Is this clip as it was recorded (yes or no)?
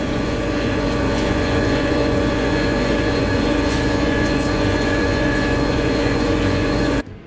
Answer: no